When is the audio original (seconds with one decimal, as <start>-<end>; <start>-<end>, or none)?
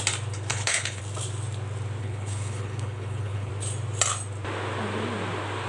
0.0-0.5; 1.0-2.0; 3.5-5.7